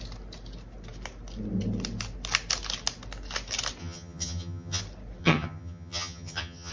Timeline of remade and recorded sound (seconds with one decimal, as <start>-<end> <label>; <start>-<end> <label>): 0.0-3.8 recorded; 3.8-4.8 remade; 4.8-5.2 recorded; 5.2-6.7 remade